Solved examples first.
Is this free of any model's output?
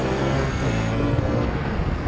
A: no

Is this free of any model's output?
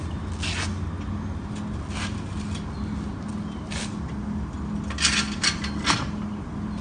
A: yes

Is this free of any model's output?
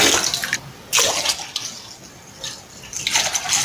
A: yes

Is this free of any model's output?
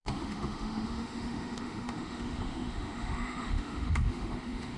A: no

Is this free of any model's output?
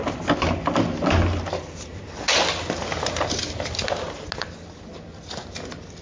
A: yes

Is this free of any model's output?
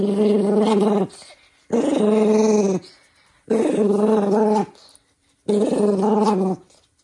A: yes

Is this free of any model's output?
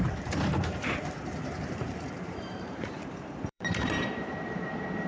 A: no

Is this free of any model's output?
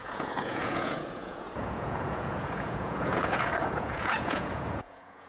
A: no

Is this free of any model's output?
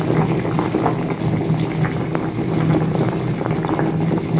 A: yes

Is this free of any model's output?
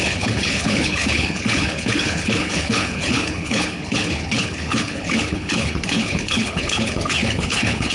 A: no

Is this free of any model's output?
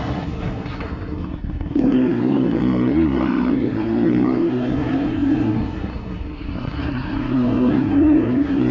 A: no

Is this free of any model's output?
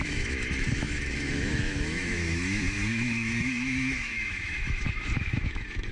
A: no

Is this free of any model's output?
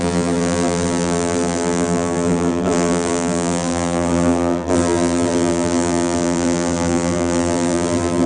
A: no